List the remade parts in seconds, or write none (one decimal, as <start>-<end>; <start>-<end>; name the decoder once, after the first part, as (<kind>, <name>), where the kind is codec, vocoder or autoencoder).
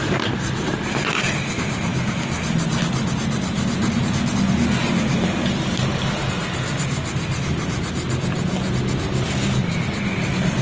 none